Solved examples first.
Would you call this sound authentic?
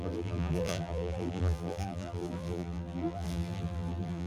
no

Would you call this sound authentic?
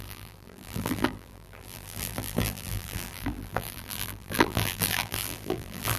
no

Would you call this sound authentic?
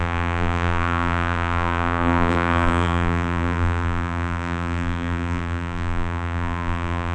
no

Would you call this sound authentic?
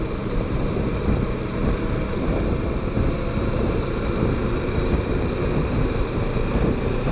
no